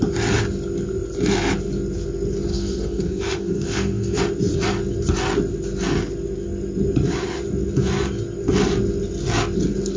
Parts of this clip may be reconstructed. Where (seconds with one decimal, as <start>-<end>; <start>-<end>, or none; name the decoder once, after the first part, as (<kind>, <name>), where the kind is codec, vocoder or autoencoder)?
2.5-4.2 (codec, SNAC)